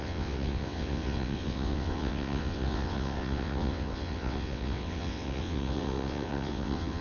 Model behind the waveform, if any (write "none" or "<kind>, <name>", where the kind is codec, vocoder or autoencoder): vocoder, WaveNeXt